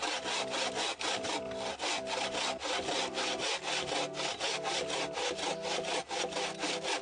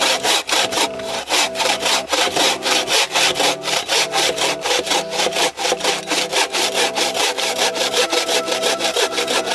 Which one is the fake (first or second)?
second